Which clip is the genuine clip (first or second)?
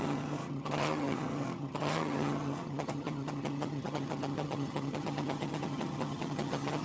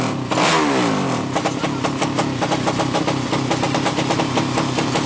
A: second